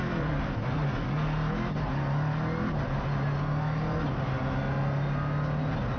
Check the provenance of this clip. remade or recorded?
recorded